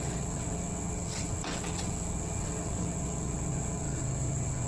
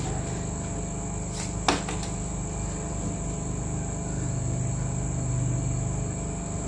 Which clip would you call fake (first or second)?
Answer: first